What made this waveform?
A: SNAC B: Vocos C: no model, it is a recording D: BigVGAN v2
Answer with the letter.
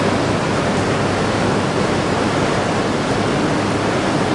C